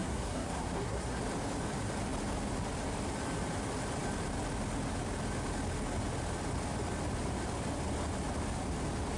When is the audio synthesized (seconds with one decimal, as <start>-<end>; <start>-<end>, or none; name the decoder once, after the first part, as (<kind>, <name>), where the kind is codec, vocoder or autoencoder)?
0.0-1.2 (codec, SNAC)